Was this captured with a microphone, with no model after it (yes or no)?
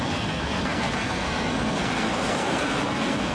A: no